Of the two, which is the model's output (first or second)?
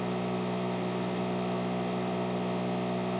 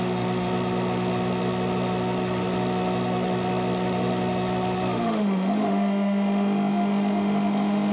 second